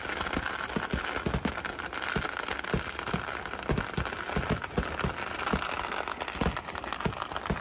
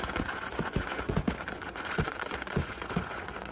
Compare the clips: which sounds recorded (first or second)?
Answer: first